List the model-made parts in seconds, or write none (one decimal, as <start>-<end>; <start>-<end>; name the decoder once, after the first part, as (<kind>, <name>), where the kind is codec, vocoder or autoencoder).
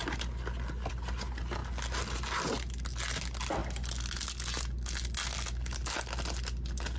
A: none